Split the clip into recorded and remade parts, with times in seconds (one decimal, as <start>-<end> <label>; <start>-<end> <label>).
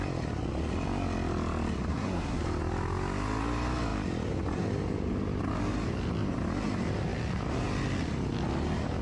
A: 0.0-1.9 recorded; 1.9-2.4 remade; 2.4-9.0 recorded